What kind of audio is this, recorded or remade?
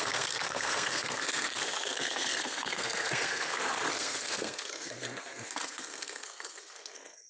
remade